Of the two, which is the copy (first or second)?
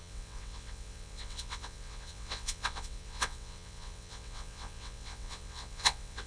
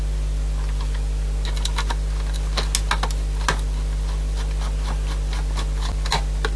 first